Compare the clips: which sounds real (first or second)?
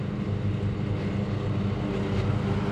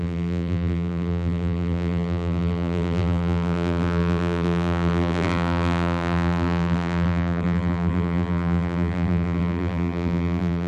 first